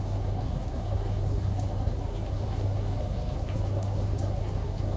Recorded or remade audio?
remade